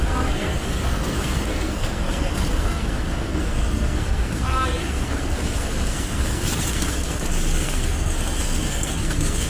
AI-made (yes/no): yes